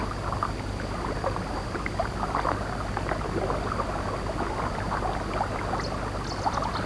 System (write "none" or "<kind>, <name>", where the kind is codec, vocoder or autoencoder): none